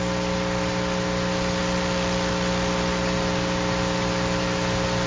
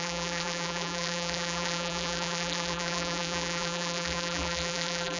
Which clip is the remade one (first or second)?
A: second